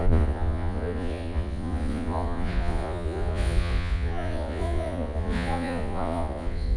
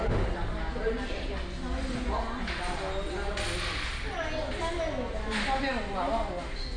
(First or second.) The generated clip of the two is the first